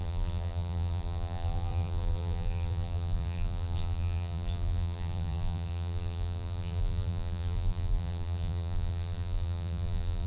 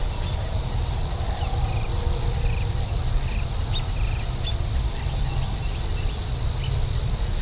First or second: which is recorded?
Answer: second